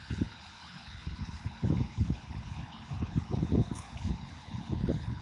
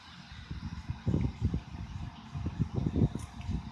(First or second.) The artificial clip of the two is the first